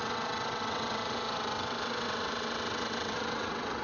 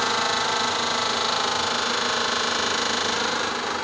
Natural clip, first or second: second